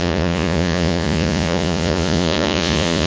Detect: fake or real fake